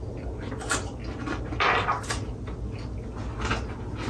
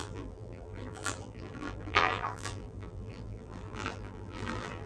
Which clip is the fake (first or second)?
second